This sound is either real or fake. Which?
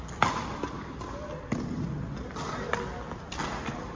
real